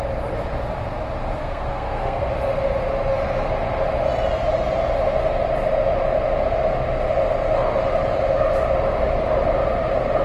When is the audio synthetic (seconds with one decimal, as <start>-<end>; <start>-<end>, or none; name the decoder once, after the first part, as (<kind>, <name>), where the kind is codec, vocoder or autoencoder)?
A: 1.4-2.3 (codec, SNAC)